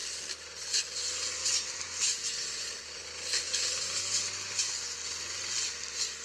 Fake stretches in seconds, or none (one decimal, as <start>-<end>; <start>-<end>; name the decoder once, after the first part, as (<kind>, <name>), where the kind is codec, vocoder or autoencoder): 1.4-4.0 (vocoder, BigVGAN v2)